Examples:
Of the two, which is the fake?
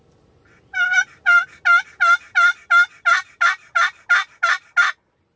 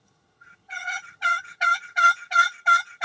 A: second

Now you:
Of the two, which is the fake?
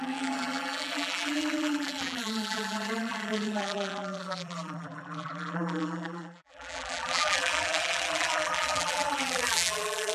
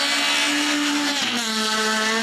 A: first